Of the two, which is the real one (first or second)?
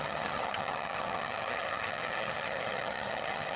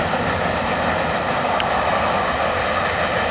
second